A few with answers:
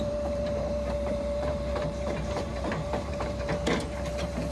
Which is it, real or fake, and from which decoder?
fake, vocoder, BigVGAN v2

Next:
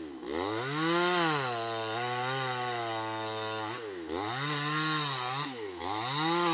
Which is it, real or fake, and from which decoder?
real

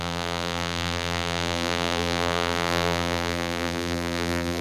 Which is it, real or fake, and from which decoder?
fake, vocoder, BigVGAN v2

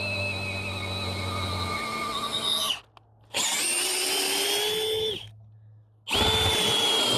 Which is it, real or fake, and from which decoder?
real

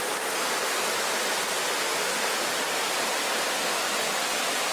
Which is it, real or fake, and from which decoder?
real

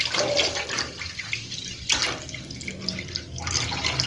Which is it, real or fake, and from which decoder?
fake, vocoder, BigVGAN v2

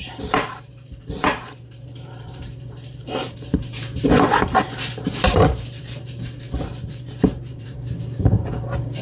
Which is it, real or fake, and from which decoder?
fake, vocoder, BigVGAN v2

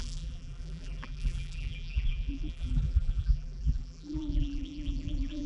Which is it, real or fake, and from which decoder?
fake, vocoder, BigVGAN v2